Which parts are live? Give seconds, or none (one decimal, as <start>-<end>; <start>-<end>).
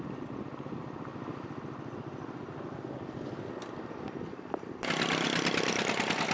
0.0-6.3